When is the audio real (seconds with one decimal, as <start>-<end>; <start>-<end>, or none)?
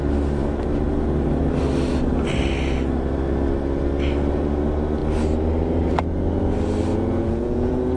0.0-6.9